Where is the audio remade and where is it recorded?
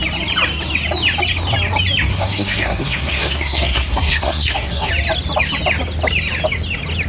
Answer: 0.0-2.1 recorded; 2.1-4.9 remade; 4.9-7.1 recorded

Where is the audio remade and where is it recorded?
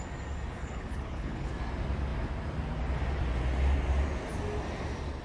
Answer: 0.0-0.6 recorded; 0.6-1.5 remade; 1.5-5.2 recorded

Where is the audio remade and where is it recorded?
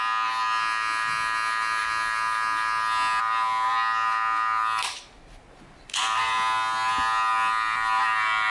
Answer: 0.0-8.5 recorded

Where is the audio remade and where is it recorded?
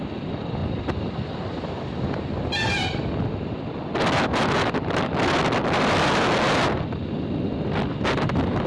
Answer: 0.0-8.7 recorded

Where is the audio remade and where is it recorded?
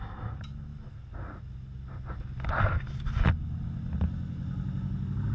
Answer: 0.0-5.3 recorded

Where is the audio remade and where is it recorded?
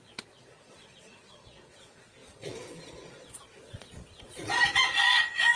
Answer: 0.0-5.6 remade